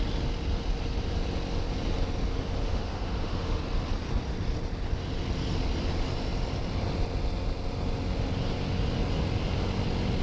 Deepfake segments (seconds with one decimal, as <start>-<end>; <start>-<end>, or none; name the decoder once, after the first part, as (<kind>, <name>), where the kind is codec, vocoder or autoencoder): 2.6-3.6 (autoencoder, DAC-VAE)